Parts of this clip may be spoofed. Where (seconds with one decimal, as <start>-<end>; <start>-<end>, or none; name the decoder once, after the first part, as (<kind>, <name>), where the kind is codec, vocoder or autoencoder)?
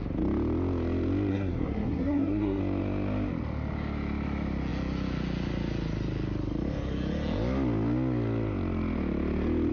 1.3-2.6 (codec, SNAC)